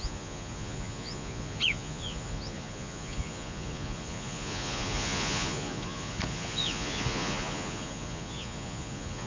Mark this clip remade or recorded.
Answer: remade